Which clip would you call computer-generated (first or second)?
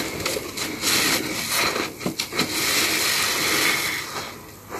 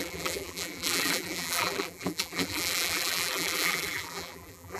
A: second